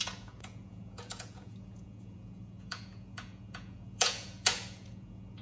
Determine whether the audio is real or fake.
fake